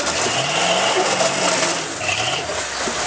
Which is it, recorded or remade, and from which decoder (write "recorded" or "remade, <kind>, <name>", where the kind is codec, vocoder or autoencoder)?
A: recorded